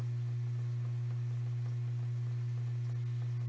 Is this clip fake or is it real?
real